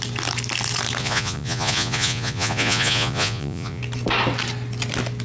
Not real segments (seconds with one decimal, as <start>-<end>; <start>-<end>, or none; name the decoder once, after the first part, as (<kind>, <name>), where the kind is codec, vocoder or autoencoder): 1.0-3.8 (vocoder, Vocos)